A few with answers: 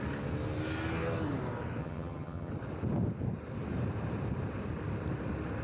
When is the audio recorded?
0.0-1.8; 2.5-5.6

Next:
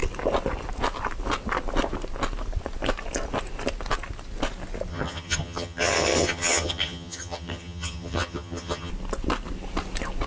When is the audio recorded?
0.0-4.9; 8.9-10.3

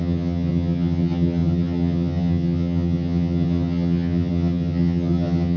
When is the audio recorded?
none

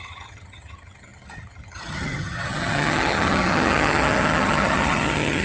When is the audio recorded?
none

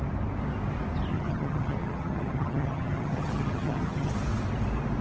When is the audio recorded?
0.0-1.1; 4.1-5.0